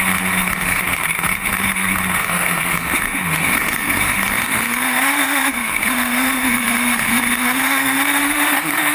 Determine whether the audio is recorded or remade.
remade